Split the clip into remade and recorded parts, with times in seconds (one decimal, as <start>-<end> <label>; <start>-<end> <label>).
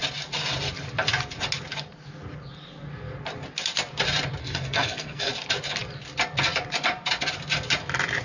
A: 0.0-4.4 recorded; 4.4-5.3 remade; 5.3-8.2 recorded